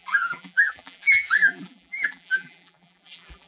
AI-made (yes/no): yes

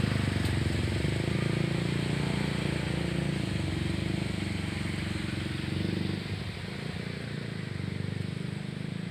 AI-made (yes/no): no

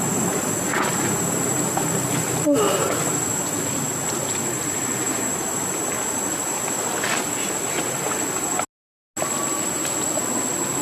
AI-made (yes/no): no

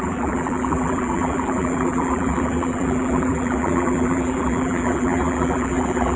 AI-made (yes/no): yes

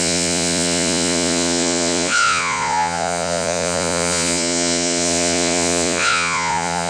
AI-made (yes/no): yes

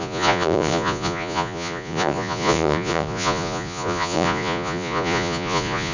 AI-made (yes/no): yes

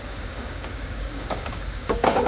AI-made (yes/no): yes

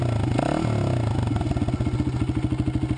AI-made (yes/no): no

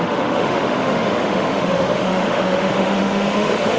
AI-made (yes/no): yes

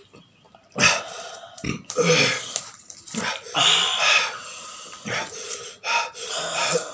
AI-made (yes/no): no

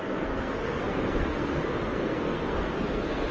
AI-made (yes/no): yes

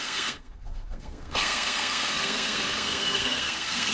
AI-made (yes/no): yes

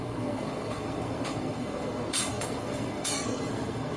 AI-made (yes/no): yes